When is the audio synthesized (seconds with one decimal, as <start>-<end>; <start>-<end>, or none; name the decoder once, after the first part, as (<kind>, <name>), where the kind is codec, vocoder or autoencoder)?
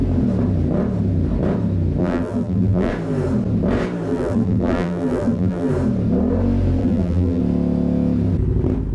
2.0-2.9 (vocoder, BigVGAN v2); 4.1-5.7; 6.8-7.4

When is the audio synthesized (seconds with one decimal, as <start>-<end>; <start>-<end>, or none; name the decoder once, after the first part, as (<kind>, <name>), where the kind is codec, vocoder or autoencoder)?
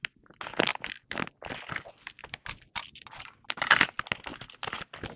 0.7-1.2 (vocoder, BigVGAN v2); 2.2-3.3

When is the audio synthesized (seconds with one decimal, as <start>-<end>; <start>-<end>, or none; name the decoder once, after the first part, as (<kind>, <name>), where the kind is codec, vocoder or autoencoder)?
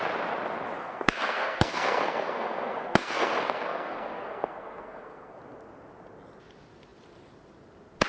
0.8-5.4 (codec, SNAC)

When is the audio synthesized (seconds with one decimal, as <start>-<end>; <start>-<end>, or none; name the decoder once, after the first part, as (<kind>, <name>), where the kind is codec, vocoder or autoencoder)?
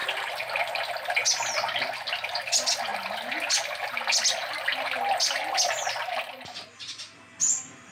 0.0-0.5 (vocoder, BigVGAN v2)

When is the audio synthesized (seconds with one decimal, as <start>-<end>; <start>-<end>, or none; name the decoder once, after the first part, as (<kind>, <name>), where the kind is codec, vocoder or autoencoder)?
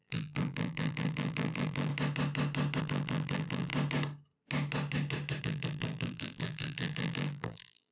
0.0-1.9 (vocoder, BigVGAN v2); 2.8-3.7; 5.4-7.9